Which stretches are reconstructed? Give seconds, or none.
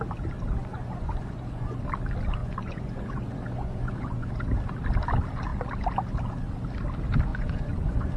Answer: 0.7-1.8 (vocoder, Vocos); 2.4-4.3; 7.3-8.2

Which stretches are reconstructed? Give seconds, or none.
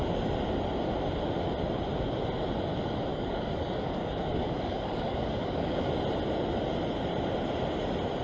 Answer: 3.1-5.9 (codec, DAC)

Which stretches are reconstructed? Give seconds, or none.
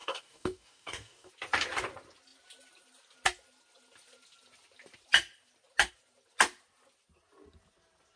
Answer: 0.0-1.3 (codec, DAC)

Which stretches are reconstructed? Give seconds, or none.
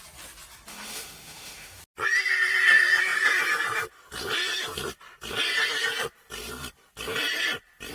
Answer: 0.7-1.8 (autoencoder, DAC-VAE)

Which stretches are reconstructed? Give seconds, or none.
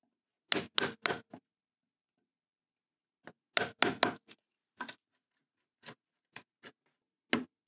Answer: none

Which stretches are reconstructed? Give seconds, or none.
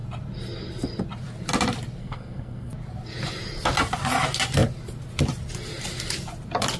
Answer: 2.0-2.7 (codec, SNAC)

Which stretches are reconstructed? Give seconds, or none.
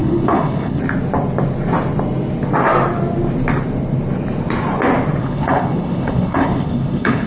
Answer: 0.0-0.8 (codec, HILCodec); 5.2-7.3